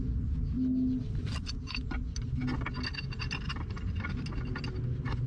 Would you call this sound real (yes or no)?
yes